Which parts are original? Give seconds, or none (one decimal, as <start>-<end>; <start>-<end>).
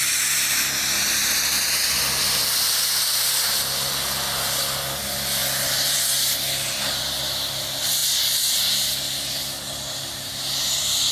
0.0-11.1